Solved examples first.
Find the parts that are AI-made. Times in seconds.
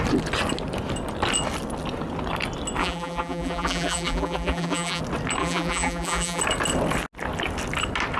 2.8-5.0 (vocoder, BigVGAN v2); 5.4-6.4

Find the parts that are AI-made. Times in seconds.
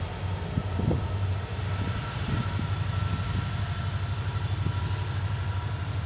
0.0-1.5 (vocoder, BigVGAN v2); 5.2-6.1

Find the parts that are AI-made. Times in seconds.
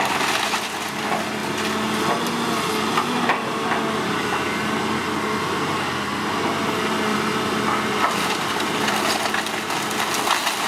7.1-9.3 (vocoder, BigVGAN v2)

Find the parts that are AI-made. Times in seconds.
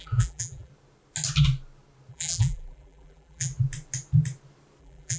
0.0-0.7 (vocoder, BigVGAN v2); 2.1-3.5; 4.8-5.2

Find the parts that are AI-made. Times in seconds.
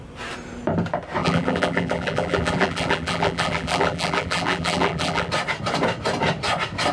1.2-5.3 (vocoder, BigVGAN v2)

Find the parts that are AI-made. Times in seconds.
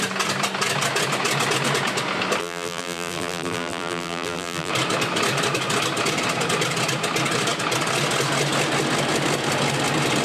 2.4-4.7 (vocoder, BigVGAN v2)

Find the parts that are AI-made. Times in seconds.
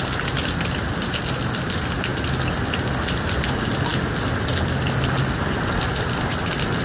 0.0-2.1 (vocoder, BigVGAN v2); 3.3-3.9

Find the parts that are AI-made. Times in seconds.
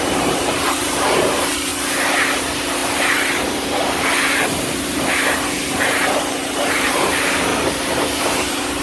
0.0-1.7 (vocoder, BigVGAN v2); 2.4-2.8; 6.2-7.5; 8.2-8.8